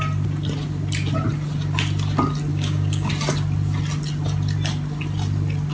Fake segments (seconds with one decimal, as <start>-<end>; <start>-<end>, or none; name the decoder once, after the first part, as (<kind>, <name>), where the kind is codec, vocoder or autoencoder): 2.5-3.1 (codec, DAC)

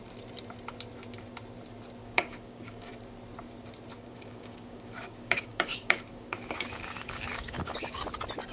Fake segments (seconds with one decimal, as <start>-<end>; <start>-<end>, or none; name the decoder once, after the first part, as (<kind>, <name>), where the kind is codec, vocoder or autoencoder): 2.0-2.9 (codec, DAC); 3.9-8.0

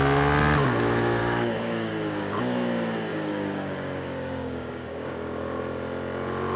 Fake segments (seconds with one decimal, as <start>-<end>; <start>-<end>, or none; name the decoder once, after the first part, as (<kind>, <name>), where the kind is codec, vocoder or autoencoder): 1.2-2.4 (codec, DAC); 3.1-5.6

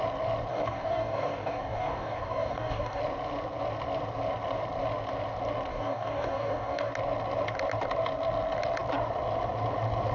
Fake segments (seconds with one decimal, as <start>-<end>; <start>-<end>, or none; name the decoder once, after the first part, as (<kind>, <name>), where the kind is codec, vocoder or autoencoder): 0.5-3.0 (codec, DAC); 5.7-6.9

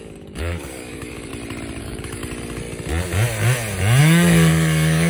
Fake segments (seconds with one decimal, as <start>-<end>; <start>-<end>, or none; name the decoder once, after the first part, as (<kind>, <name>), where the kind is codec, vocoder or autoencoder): 0.0-1.3 (codec, DAC); 1.8-2.2; 4.0-5.1